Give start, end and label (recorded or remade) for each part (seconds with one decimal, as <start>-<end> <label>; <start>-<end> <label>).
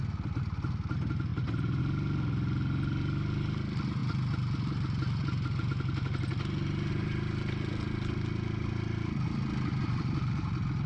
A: 0.0-1.3 recorded; 1.3-1.8 remade; 1.8-9.8 recorded; 9.8-10.5 remade; 10.5-10.9 recorded